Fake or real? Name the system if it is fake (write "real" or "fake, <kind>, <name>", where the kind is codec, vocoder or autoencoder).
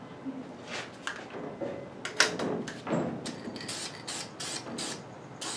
real